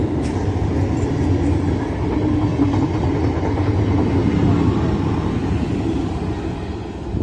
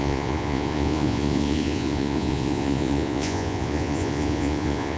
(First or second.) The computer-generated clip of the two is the second